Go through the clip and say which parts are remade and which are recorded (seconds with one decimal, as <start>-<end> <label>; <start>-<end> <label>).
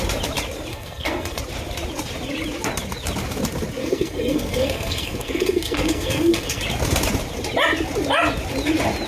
0.0-0.7 recorded; 0.7-1.4 remade; 1.4-3.8 recorded; 3.8-6.6 remade; 6.6-9.1 recorded